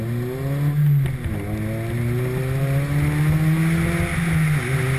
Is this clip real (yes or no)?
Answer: yes